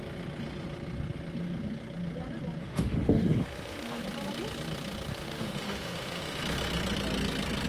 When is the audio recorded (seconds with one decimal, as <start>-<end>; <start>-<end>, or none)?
0.0-2.6; 4.0-5.1; 6.4-7.7